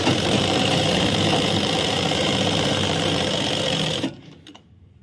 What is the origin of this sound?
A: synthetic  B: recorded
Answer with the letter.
A